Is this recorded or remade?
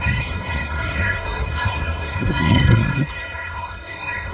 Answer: remade